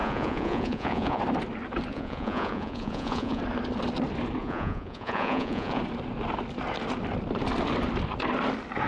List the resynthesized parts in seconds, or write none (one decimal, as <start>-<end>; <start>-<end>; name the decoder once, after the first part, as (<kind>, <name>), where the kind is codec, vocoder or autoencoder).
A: 0.0-1.2 (vocoder, Vocos); 1.9-3.4; 4.4-5.8